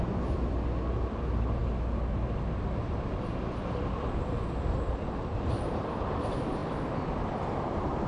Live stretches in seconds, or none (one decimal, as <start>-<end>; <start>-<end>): 1.6-4.2